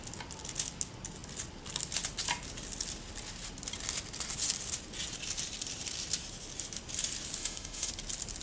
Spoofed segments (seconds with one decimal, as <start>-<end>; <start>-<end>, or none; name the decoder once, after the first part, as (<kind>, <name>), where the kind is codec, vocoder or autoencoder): 7.4-7.9 (autoencoder, DAC-VAE)